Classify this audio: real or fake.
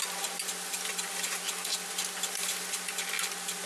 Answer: real